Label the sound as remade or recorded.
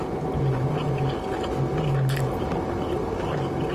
recorded